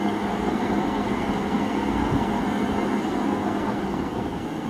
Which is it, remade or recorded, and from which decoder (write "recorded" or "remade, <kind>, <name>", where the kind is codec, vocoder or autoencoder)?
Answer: remade, codec, SNAC